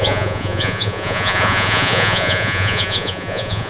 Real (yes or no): no